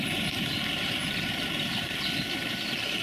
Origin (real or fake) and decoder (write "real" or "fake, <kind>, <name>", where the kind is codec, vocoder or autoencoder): real